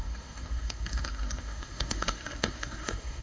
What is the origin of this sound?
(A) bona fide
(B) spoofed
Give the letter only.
B